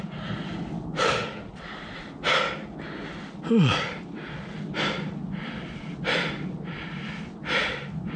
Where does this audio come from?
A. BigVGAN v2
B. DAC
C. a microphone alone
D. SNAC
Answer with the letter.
C